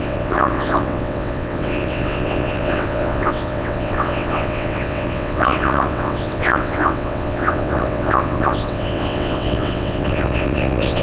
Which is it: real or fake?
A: fake